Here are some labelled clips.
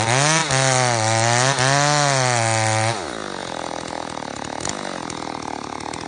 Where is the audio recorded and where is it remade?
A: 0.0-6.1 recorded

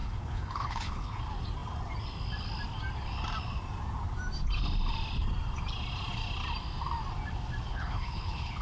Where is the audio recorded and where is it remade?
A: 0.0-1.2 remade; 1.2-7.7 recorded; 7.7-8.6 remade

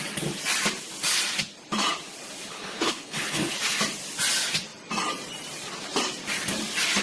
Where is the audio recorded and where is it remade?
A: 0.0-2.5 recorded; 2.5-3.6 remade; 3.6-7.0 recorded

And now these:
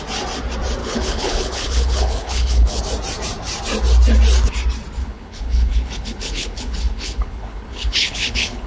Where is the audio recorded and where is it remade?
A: 0.0-0.8 recorded; 0.8-2.8 remade; 2.8-5.0 recorded; 5.0-8.7 remade

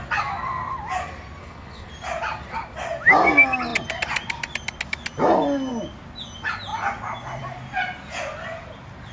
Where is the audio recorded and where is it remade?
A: 0.0-1.4 recorded; 1.4-1.9 remade; 1.9-9.1 recorded